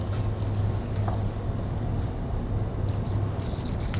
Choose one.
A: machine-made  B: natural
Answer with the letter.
B